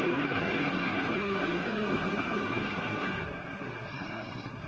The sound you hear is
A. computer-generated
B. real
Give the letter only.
A